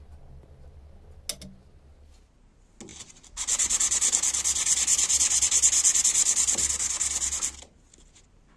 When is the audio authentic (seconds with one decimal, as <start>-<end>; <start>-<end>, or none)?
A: 0.0-8.6